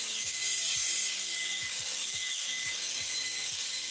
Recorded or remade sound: remade